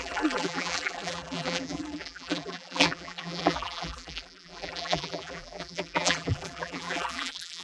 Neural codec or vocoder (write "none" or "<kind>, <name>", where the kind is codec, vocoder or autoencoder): vocoder, BigVGAN v2